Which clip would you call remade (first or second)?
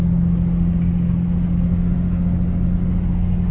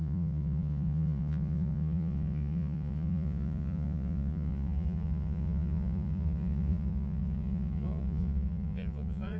second